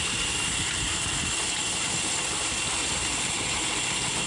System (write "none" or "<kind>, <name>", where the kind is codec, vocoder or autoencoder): none